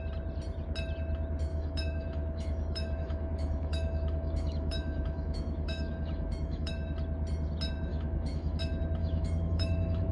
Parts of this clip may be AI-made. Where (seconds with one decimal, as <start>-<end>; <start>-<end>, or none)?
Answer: 1.5-6.7; 7.9-8.6; 9.0-10.1